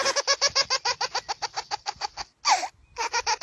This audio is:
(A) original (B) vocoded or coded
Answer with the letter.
A